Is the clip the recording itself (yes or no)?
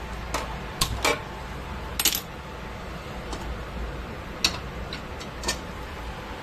yes